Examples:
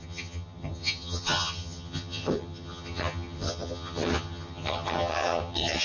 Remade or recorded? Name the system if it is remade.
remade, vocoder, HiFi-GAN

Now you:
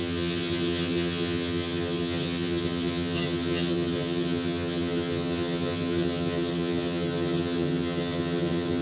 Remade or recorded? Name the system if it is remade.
remade, vocoder, HiFi-GAN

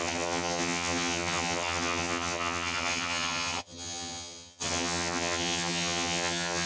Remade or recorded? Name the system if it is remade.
remade, vocoder, HiFi-GAN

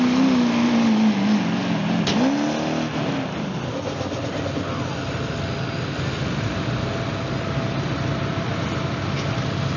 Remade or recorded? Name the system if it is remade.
recorded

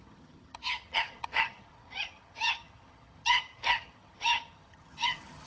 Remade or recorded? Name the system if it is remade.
remade, vocoder, HiFi-GAN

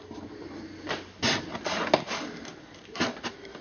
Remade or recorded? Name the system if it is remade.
recorded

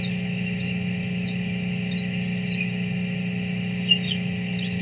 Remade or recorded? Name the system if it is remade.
recorded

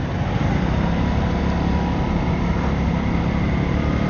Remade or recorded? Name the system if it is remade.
recorded